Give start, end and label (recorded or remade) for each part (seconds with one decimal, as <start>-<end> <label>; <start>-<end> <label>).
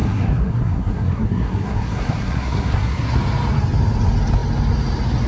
0.0-3.2 remade; 3.2-5.3 recorded